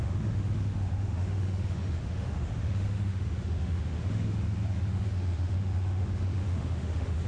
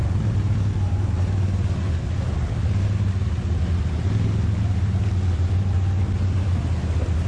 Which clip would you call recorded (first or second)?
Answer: second